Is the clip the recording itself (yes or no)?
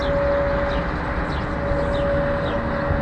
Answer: yes